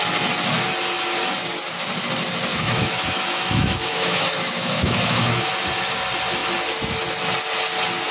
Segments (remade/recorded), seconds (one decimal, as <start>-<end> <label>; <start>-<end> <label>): 0.0-2.5 recorded; 2.5-5.5 remade; 5.5-8.1 recorded